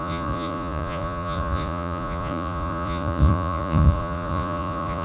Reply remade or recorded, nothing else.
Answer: remade